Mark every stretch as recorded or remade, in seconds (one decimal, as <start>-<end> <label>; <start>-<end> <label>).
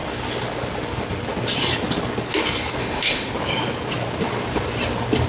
0.0-2.8 recorded; 2.8-3.3 remade; 3.3-5.3 recorded